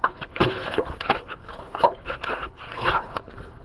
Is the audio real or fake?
fake